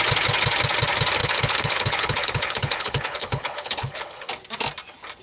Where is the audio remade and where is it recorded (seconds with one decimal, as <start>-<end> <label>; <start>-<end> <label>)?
0.0-1.2 recorded; 1.2-4.3 remade; 4.3-5.2 recorded